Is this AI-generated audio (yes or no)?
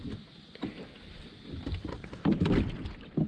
no